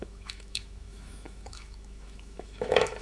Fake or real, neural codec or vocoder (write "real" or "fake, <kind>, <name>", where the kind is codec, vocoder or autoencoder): fake, autoencoder, DAC-VAE